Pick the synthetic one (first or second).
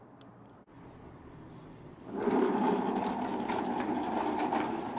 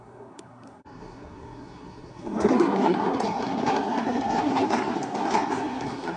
second